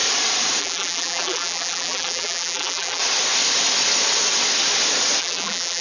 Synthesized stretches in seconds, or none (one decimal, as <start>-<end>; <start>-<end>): 0.6-3.0; 5.2-5.8